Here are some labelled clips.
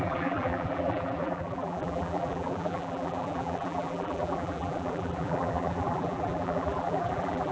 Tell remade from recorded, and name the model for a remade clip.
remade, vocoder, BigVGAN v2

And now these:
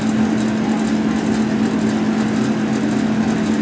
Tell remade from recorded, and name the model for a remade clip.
recorded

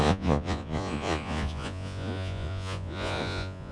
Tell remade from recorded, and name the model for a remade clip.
remade, vocoder, Vocos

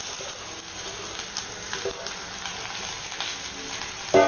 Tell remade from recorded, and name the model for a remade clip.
recorded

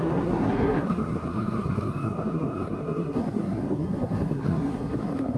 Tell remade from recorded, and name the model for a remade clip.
remade, codec, SNAC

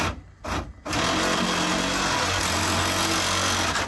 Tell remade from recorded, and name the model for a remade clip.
recorded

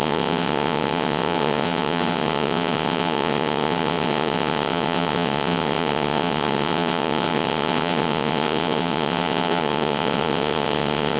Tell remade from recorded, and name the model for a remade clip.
remade, vocoder, WaveNeXt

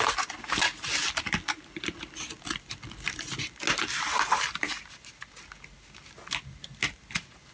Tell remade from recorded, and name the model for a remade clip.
recorded